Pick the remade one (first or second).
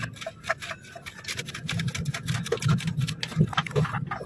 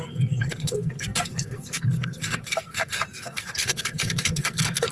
second